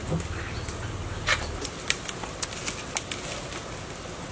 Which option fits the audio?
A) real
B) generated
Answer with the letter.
A